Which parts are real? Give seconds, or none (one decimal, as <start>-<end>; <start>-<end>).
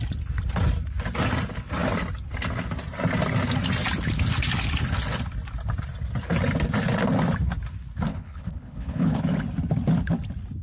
0.0-8.1; 9.2-10.6